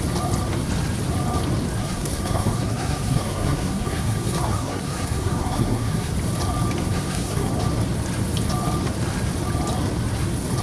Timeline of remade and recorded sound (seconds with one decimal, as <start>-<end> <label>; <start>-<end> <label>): 0.0-1.8 recorded; 1.8-6.1 remade; 6.1-6.8 recorded; 6.8-7.5 remade; 7.5-10.6 recorded